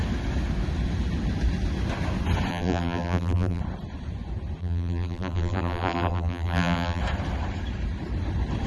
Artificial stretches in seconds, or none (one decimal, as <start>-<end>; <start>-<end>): 2.5-3.6; 4.6-7.0